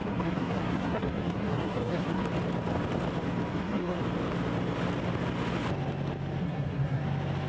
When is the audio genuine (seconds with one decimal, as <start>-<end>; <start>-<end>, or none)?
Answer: 2.2-3.5; 4.0-6.4; 7.0-7.5